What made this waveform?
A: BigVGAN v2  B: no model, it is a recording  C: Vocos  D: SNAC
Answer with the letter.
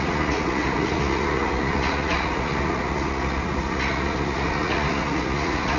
C